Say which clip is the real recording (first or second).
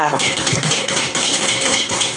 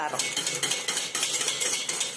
second